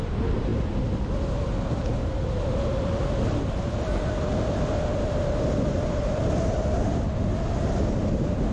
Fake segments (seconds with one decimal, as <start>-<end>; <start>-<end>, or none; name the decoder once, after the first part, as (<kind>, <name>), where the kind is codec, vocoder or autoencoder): none